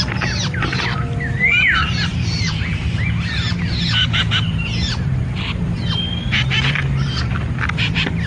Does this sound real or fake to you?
fake